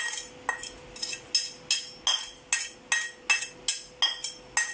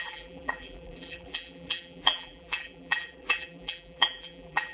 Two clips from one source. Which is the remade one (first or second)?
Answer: second